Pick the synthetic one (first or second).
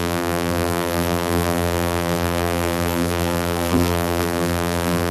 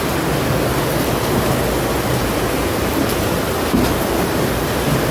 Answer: first